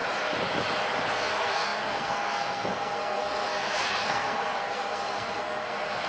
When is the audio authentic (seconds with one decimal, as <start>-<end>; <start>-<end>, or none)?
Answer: 0.0-1.1